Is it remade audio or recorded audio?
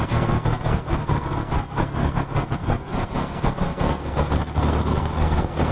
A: remade